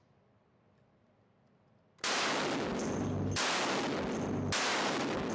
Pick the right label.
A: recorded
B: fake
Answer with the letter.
A